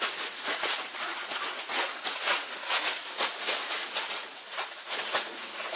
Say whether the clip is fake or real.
fake